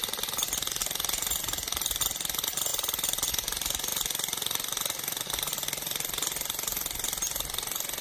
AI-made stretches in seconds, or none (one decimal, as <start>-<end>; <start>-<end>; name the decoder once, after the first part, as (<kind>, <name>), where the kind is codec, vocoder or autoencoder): 2.7-3.3 (vocoder, BigVGAN v2); 3.9-5.5